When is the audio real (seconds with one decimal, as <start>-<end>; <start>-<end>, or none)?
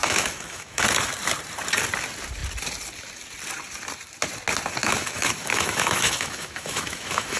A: 0.8-4.8